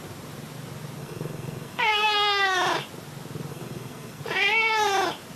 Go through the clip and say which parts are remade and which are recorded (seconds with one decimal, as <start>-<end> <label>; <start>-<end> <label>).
0.0-1.0 recorded; 1.0-2.4 remade; 2.4-3.5 recorded; 3.5-4.2 remade; 4.2-5.4 recorded